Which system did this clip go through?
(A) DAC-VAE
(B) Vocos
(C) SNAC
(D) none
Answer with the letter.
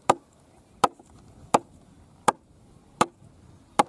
D